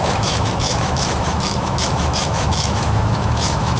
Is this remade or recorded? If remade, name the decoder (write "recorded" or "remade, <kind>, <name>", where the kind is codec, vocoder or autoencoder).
remade, autoencoder, DAC-VAE